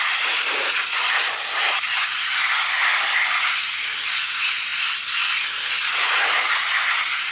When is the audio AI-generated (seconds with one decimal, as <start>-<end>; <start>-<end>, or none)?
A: none